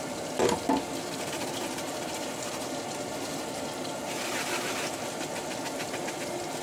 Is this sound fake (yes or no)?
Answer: no